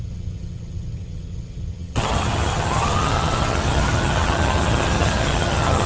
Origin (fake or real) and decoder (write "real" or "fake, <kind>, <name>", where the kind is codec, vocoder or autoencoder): fake, vocoder, HiFi-GAN